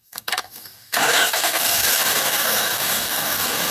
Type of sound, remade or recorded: remade